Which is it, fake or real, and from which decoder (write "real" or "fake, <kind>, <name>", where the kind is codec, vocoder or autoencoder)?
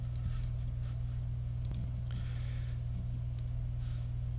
real